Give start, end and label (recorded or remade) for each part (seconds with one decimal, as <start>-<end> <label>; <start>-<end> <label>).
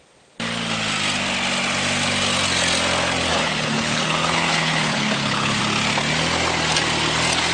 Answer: 0.0-3.3 recorded; 3.3-5.6 remade; 5.6-7.5 recorded